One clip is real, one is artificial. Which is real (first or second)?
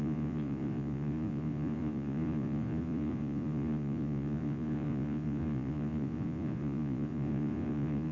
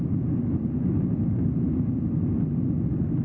second